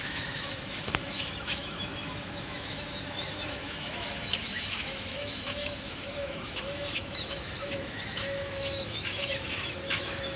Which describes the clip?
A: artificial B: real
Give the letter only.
A